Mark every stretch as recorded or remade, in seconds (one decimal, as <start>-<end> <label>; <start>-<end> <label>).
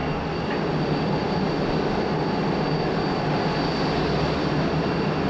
0.0-5.3 recorded